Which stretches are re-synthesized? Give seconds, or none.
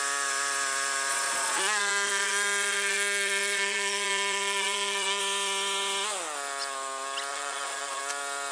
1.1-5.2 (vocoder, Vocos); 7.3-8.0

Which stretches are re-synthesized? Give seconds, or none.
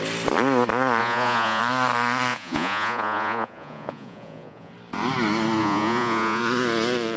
1.0-1.6 (vocoder, Vocos); 2.3-4.7; 5.6-6.4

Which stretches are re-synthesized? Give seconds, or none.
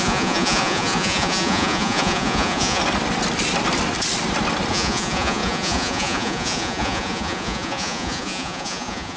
0.0-2.8 (vocoder, Vocos); 4.7-9.2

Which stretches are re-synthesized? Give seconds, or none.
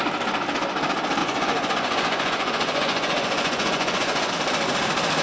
1.2-4.3 (vocoder, Vocos)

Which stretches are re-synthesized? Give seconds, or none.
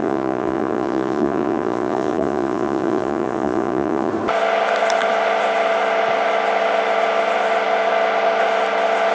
0.0-4.1 (vocoder, Vocos)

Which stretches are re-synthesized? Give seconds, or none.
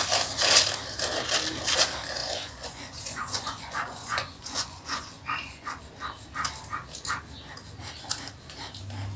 2.2-5.8 (vocoder, Vocos)